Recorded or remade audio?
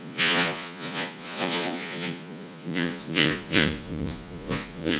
remade